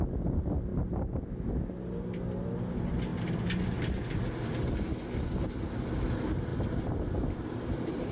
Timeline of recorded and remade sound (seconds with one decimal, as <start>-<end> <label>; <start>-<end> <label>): 0.0-6.5 recorded; 6.5-8.1 remade